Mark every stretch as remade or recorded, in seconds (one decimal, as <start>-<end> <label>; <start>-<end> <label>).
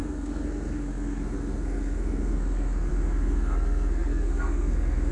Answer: 0.0-5.1 remade